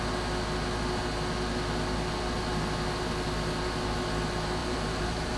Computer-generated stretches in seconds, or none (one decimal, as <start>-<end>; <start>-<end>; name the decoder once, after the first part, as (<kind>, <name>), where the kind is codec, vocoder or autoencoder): 4.6-5.4 (vocoder, BigVGAN v2)